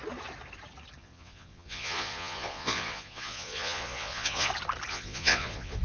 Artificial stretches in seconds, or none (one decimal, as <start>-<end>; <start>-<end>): 1.0-4.5; 4.9-5.8